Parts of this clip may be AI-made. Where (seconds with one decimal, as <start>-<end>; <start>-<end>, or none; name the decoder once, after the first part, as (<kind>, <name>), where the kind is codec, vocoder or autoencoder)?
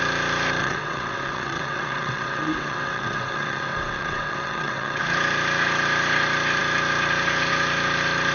0.6-5.0 (vocoder, WaveNeXt)